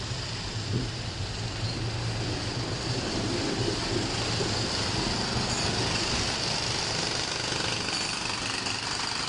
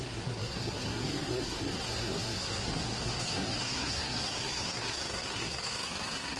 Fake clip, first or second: second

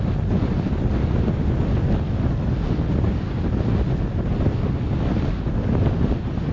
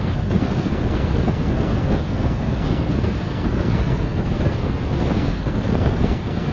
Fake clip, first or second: second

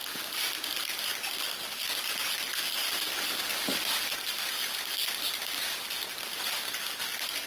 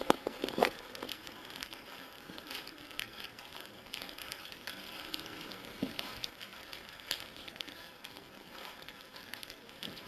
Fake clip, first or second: second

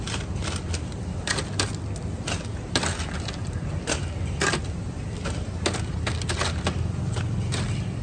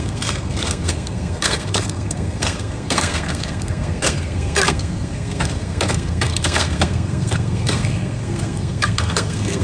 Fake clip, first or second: second